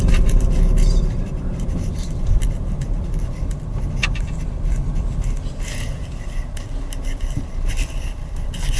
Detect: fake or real fake